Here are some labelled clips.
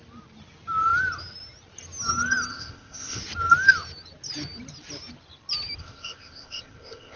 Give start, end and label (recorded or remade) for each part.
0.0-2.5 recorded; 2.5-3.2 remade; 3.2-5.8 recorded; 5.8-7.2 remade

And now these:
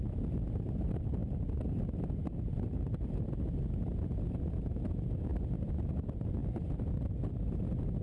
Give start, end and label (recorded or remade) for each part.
0.0-8.0 recorded

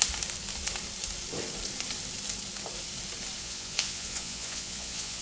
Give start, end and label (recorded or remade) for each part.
0.0-3.4 recorded; 3.4-5.2 remade

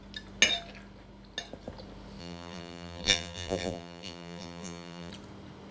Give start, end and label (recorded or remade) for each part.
0.0-2.2 recorded; 2.2-5.1 remade; 5.1-5.7 recorded